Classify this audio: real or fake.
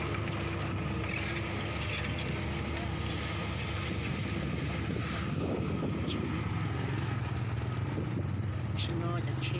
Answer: real